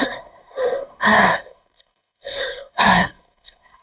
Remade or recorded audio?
remade